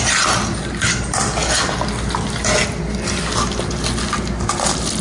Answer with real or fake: real